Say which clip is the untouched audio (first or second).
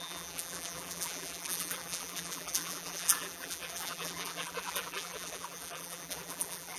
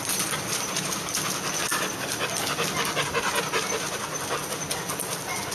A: second